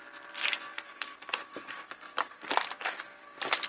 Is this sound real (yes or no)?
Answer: yes